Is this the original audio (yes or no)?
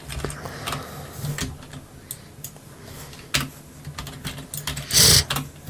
yes